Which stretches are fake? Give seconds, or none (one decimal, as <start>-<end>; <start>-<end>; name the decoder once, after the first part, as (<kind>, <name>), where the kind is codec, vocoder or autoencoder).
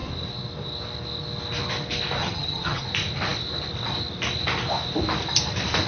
2.2-2.8 (vocoder, HiFi-GAN)